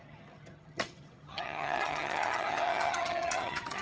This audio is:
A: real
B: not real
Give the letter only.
B